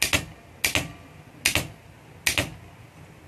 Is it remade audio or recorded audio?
recorded